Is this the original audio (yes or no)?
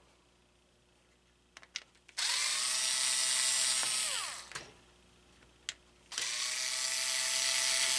yes